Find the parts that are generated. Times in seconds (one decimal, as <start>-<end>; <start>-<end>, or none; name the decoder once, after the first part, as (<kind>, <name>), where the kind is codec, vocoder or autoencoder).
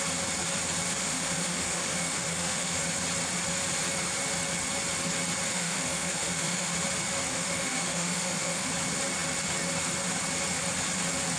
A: 1.0-2.8 (autoencoder, DAC-VAE); 5.5-6.7; 7.3-8.7